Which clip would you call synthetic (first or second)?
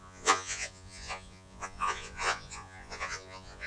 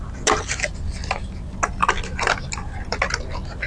first